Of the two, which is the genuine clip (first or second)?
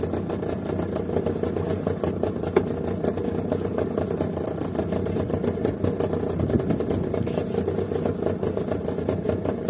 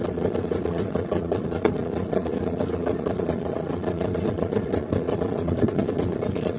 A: first